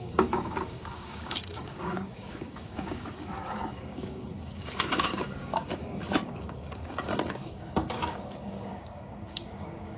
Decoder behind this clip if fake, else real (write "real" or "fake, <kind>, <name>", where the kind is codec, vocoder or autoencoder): fake, codec, DAC